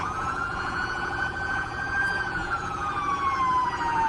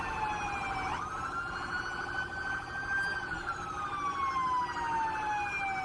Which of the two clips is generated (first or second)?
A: first